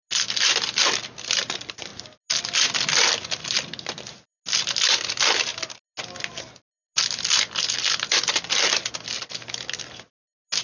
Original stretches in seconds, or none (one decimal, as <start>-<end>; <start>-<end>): 0.0-10.6